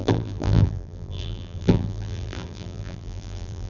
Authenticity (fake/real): fake